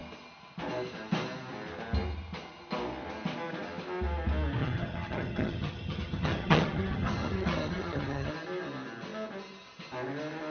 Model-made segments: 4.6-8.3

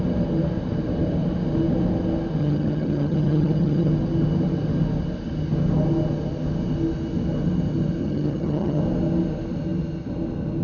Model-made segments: 2.4-3.9; 8.0-8.8

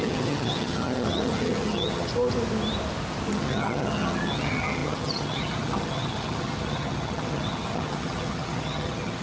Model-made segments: 0.0-2.1; 3.3-9.2